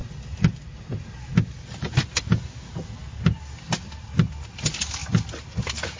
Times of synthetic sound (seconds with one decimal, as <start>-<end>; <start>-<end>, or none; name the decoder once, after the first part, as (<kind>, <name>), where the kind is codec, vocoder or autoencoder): none